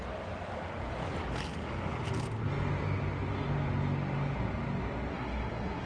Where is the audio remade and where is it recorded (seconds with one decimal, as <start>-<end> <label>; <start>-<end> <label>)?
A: 0.0-5.1 recorded; 5.1-5.9 remade